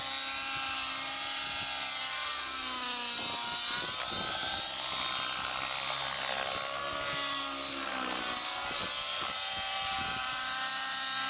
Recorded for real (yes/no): yes